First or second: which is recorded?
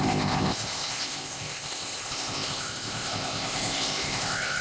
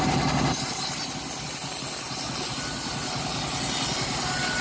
second